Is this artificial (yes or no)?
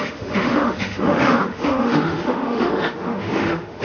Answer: yes